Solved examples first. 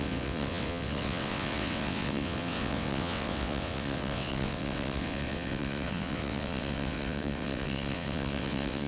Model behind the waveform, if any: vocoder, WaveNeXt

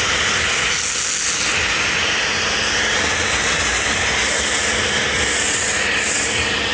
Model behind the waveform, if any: none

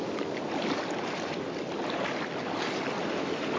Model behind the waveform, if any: none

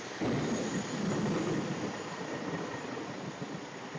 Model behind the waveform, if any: none